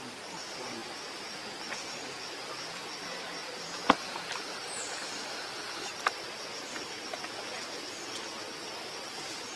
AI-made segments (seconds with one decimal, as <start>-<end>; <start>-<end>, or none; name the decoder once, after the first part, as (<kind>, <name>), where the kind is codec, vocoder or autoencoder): none